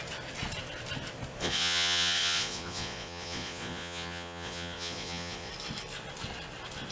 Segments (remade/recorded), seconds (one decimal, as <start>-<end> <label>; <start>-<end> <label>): 0.0-1.4 recorded; 1.4-5.5 remade; 5.5-6.9 recorded